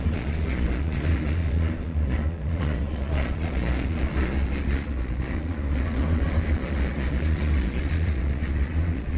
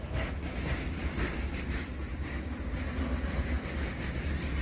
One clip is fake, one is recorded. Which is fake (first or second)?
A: first